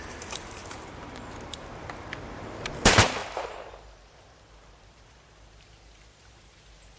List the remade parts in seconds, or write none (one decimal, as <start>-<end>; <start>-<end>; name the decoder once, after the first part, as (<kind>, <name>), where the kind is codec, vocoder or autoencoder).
0.0-7.0 (vocoder, BigVGAN v2)

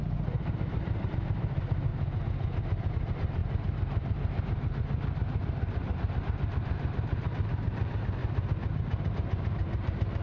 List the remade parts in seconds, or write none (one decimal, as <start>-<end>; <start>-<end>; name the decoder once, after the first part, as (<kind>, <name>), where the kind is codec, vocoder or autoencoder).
0.0-1.9 (vocoder, BigVGAN v2); 2.9-8.2; 9.1-10.2

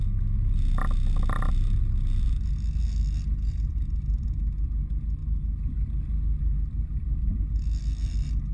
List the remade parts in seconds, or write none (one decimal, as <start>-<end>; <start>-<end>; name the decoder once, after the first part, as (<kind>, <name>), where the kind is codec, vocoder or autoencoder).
3.7-4.4 (vocoder, BigVGAN v2)

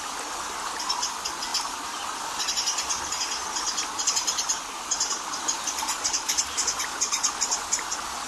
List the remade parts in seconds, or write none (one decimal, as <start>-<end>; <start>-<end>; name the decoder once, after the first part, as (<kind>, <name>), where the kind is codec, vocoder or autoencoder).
none